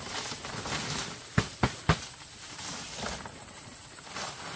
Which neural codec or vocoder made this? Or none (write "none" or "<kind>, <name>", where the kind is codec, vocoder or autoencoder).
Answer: none